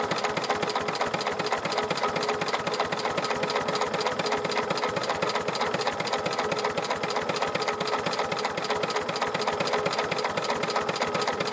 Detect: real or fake real